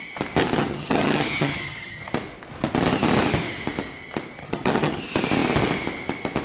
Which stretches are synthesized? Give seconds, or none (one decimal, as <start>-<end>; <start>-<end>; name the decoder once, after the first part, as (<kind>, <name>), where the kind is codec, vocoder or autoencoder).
0.6-2.1 (vocoder, HiFi-GAN); 4.4-5.0